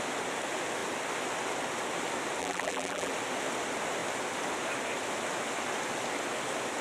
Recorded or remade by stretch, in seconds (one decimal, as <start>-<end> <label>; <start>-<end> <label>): 0.0-2.4 recorded; 2.4-3.1 remade; 3.1-6.8 recorded